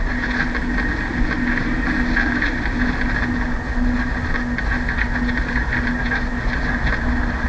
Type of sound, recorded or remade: recorded